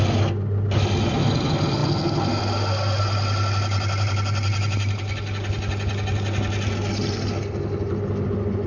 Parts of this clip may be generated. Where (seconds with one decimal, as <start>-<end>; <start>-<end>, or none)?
none